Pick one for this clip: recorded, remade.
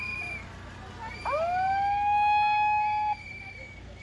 recorded